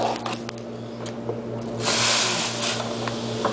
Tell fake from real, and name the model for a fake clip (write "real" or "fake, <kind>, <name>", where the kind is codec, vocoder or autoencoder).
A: real